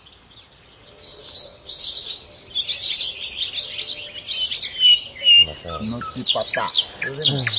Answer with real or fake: real